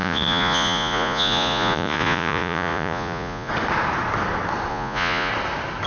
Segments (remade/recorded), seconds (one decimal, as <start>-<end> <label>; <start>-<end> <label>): 0.0-3.5 remade; 3.5-4.7 recorded; 4.7-5.3 remade; 5.3-5.9 recorded

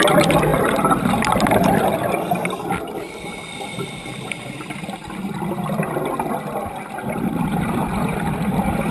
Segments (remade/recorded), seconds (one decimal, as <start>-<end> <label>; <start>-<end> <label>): 0.0-8.9 recorded

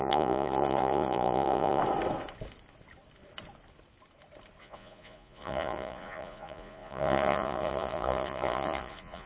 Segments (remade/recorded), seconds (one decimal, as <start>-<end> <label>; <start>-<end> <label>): 0.0-1.8 remade; 1.8-4.6 recorded; 4.6-9.3 remade

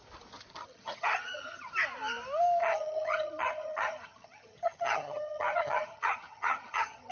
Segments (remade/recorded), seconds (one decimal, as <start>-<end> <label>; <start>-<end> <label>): 0.0-0.6 recorded; 0.6-1.7 remade; 1.7-2.6 recorded; 2.6-7.1 remade

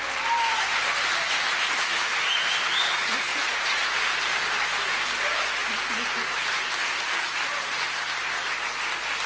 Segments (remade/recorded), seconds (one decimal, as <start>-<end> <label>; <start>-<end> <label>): 0.0-3.3 recorded; 3.3-4.0 remade; 4.0-9.3 recorded

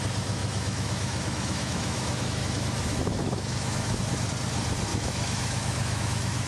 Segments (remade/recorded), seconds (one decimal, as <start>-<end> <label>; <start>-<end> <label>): 0.0-0.4 recorded; 0.4-4.1 remade; 4.1-4.9 recorded; 4.9-6.5 remade

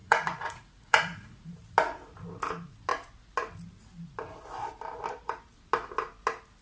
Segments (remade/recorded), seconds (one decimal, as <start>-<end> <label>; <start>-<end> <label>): 0.0-1.5 remade; 1.5-6.6 recorded